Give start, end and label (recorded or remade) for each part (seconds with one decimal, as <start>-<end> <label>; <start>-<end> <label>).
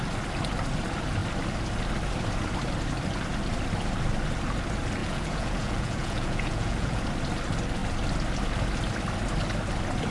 0.0-5.0 recorded; 5.0-7.0 remade; 7.0-10.1 recorded